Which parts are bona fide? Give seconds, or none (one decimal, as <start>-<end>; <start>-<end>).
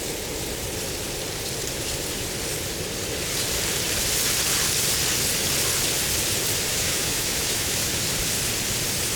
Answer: 0.0-6.7; 7.9-9.2